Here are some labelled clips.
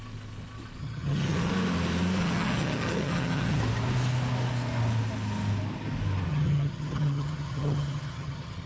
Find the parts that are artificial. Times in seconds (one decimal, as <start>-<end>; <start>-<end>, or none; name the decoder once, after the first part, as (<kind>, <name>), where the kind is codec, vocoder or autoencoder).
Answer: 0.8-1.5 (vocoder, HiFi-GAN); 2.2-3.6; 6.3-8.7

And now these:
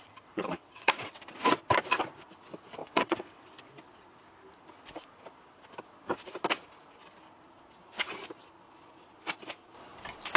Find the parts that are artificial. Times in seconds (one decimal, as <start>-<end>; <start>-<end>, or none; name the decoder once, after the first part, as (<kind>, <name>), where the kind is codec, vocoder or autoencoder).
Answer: 0.6-1.2 (vocoder, WaveNeXt); 2.8-3.4

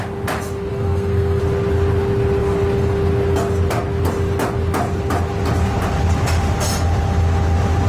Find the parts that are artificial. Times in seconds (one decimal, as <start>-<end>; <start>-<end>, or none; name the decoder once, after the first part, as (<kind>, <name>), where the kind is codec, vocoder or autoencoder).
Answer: 0.7-1.4 (codec, SNAC)

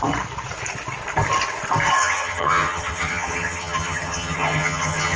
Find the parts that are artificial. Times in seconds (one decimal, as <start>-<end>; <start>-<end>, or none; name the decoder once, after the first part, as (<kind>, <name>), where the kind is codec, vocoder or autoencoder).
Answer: 2.0-5.2 (vocoder, HiFi-GAN)

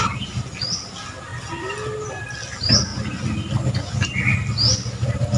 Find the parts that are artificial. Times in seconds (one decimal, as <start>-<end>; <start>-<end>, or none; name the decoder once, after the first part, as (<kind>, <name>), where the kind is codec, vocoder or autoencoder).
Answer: none